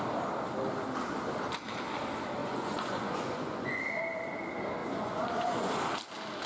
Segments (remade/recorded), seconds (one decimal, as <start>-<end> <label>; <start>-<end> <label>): 0.0-2.4 recorded; 2.4-3.8 remade; 3.8-4.8 recorded; 4.8-5.7 remade; 5.7-6.5 recorded